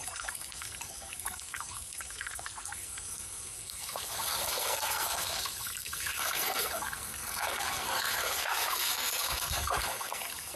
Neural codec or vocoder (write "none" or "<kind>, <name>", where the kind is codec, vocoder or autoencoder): codec, SNAC